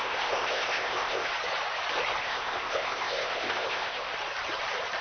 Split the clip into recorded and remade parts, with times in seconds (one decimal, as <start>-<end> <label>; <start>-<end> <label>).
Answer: 0.0-1.3 remade; 1.3-2.2 recorded; 2.2-4.1 remade; 4.1-5.0 recorded